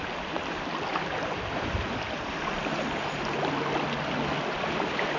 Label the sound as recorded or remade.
recorded